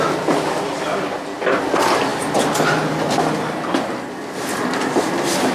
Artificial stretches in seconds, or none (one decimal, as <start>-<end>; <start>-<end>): none